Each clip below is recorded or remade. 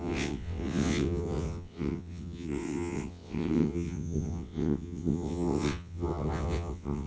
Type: remade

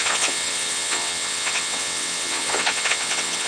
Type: remade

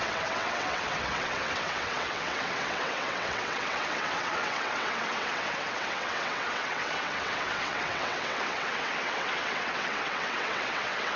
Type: remade